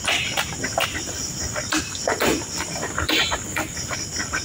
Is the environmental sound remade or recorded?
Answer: remade